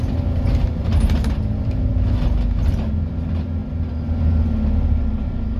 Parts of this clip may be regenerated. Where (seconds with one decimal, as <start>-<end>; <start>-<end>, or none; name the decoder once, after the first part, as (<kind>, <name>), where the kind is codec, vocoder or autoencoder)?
none